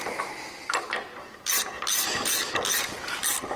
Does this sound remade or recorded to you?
recorded